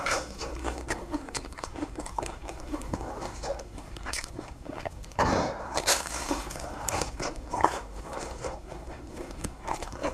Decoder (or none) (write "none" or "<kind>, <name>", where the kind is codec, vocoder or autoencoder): codec, SNAC